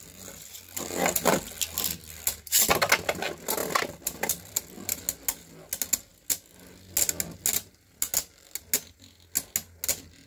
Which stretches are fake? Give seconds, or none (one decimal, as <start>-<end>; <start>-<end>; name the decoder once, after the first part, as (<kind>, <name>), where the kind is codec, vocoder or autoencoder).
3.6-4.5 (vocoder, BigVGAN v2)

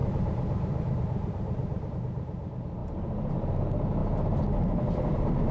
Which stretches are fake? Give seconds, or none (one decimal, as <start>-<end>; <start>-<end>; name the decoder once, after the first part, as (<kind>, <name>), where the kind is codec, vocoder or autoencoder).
0.0-1.9 (vocoder, BigVGAN v2)

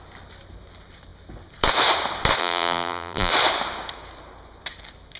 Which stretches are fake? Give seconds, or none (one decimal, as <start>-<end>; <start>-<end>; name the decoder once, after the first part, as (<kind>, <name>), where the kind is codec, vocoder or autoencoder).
2.4-3.3 (vocoder, BigVGAN v2)

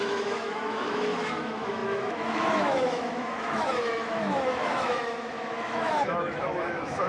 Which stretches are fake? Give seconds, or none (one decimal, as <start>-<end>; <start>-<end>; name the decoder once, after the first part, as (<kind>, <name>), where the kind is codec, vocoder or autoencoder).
0.0-7.1 (autoencoder, DAC-VAE)

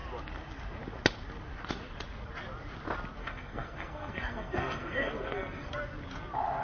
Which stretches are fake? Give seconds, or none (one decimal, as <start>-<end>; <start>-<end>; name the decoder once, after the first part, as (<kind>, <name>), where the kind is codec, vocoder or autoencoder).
3.2-5.7 (codec, SNAC)

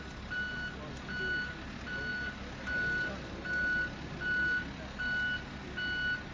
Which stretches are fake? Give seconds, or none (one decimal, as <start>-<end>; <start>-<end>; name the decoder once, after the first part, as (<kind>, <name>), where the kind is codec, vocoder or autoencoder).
none

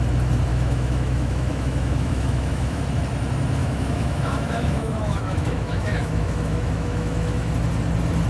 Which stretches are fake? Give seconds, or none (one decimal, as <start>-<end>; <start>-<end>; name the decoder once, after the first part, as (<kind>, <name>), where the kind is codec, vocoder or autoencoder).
0.5-2.8 (autoencoder, DAC-VAE); 3.6-7.5